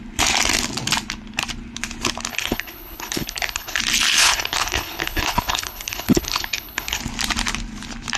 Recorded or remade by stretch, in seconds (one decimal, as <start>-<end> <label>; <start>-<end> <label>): 0.0-2.3 recorded; 2.3-3.8 remade; 3.8-4.2 recorded; 4.2-7.0 remade; 7.0-8.2 recorded